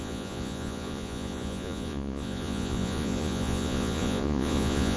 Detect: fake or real fake